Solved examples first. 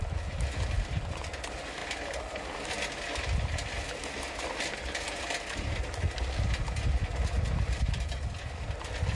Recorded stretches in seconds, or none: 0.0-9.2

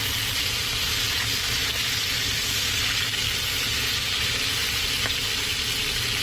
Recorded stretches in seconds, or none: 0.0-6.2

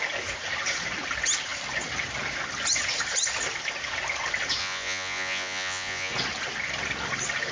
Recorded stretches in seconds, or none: 0.0-4.6; 6.1-7.5

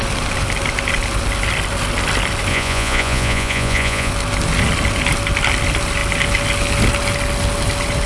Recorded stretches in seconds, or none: 0.0-2.5; 4.1-8.1

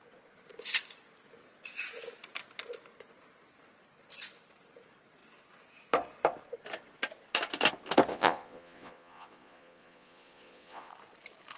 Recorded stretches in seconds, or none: 0.0-8.1; 10.9-11.6